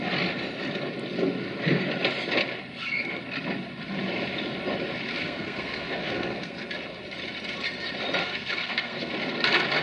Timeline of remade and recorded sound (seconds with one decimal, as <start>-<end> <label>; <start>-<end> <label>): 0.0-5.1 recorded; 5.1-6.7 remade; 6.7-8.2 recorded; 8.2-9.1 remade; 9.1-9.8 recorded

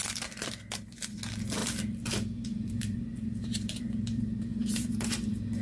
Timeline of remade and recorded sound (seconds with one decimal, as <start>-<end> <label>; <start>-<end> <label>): 0.0-1.6 recorded; 1.6-4.9 remade; 4.9-5.6 recorded

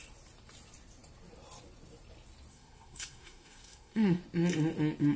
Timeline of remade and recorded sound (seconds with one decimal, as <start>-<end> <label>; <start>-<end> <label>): 0.0-2.5 recorded; 2.5-4.2 remade; 4.2-5.2 recorded

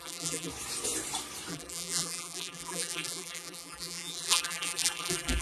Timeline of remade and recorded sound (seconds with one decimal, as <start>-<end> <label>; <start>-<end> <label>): 0.0-0.5 remade; 0.5-1.5 recorded; 1.5-5.4 remade

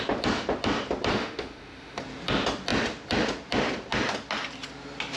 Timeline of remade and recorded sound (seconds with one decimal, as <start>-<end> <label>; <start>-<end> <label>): 0.0-1.1 recorded; 1.1-2.0 remade; 2.0-5.2 recorded